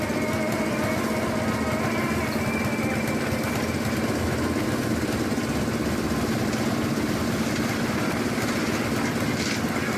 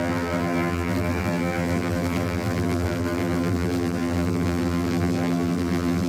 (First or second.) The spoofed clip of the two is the second